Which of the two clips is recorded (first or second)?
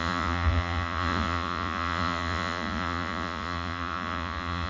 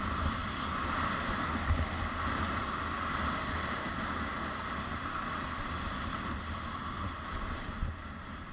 second